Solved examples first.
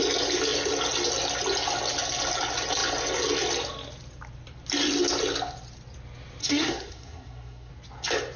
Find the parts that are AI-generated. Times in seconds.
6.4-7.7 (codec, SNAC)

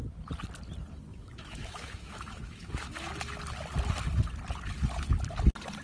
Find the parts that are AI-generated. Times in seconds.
1.1-3.1 (autoencoder, DAC-VAE)

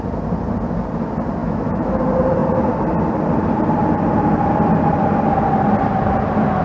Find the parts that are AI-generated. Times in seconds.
1.4-2.0 (autoencoder, DAC-VAE)

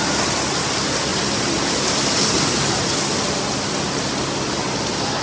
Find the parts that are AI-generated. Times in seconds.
none

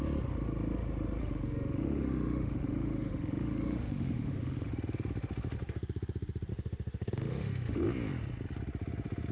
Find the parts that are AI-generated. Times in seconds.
1.2-4.7 (autoencoder, DAC-VAE); 6.5-7.8

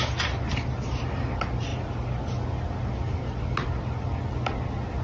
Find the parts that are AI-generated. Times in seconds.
none

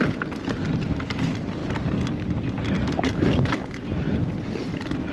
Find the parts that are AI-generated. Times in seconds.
none

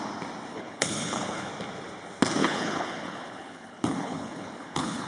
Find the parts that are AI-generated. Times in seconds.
0.5-1.5 (codec, HILCodec); 2.4-5.1